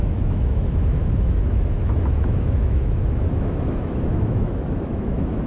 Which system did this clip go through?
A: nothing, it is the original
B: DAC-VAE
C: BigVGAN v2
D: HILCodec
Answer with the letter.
B